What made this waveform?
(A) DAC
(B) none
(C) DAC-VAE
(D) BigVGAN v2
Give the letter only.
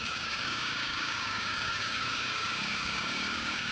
A